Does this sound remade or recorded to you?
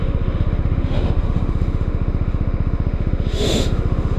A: remade